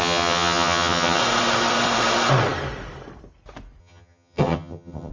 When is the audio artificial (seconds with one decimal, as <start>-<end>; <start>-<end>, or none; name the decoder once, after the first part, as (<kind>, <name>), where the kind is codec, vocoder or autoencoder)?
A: 0.0-1.2 (vocoder, HiFi-GAN); 3.8-5.1